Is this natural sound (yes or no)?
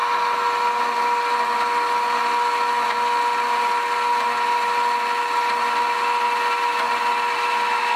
yes